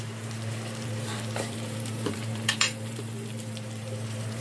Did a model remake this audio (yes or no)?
yes